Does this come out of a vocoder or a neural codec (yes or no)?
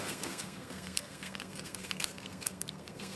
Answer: yes